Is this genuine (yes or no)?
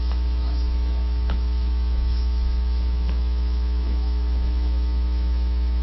no